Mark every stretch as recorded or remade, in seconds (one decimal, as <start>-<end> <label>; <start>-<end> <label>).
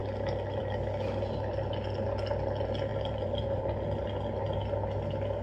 0.0-2.9 recorded; 2.9-3.6 remade; 3.6-5.4 recorded